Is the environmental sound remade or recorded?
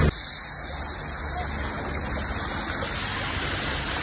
recorded